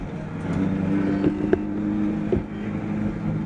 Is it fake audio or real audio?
real